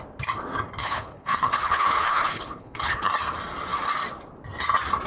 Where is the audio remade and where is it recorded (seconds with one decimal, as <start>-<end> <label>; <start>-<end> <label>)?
0.0-0.8 recorded; 0.8-3.1 remade; 3.1-5.1 recorded